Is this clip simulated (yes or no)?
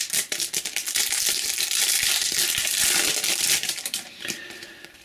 yes